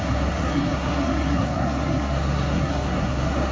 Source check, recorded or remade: remade